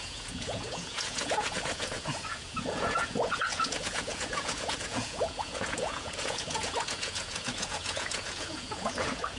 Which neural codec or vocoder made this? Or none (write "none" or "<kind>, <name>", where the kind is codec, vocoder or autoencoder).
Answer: vocoder, Vocos